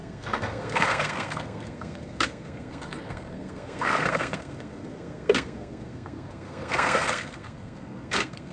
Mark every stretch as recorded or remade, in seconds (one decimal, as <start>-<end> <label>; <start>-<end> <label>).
0.0-8.5 remade